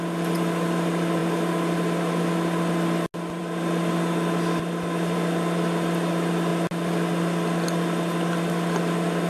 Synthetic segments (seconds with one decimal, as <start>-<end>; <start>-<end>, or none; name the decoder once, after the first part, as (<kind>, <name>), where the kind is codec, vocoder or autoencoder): none